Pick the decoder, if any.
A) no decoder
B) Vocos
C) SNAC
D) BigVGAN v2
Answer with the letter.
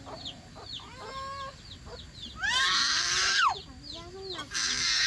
A